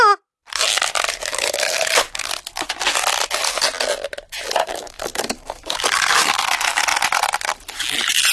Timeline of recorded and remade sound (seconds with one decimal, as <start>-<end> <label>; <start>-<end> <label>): 0.0-1.3 recorded; 1.3-2.3 remade; 2.3-4.6 recorded; 4.6-6.5 remade; 6.5-8.3 recorded